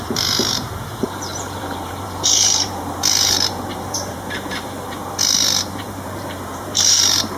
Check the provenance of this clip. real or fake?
fake